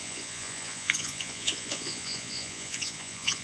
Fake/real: fake